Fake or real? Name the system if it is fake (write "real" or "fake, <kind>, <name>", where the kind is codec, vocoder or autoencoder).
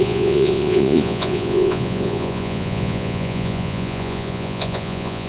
fake, vocoder, Vocos